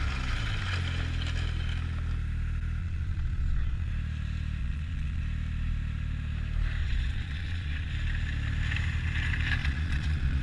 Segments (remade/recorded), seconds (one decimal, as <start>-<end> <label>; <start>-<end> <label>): 0.0-2.8 recorded; 2.8-3.9 remade; 3.9-4.6 recorded; 4.6-5.2 remade; 5.2-6.8 recorded; 6.8-7.9 remade; 7.9-9.6 recorded; 9.6-10.4 remade